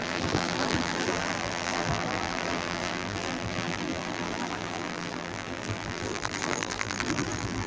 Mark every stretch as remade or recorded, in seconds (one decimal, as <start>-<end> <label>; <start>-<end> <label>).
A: 0.0-7.7 remade